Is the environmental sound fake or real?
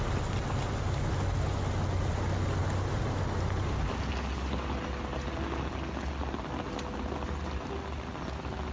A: real